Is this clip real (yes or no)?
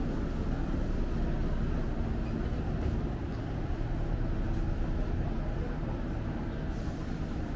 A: yes